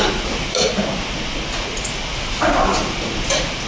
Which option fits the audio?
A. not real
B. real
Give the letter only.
B